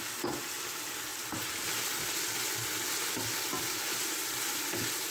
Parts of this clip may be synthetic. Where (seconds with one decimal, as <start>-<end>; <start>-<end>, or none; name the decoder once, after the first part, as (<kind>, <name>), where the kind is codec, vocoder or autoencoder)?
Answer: none